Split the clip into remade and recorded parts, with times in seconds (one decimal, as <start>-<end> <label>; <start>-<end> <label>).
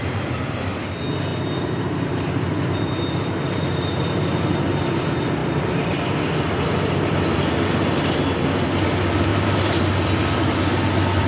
0.0-1.3 recorded; 1.3-4.6 remade; 4.6-9.3 recorded; 9.3-9.9 remade; 9.9-11.3 recorded